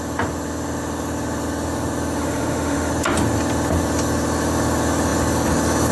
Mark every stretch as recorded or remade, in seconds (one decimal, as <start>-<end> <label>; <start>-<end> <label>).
0.0-2.2 recorded; 2.2-2.9 remade; 2.9-5.9 recorded